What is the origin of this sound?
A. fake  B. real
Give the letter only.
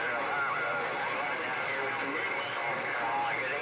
B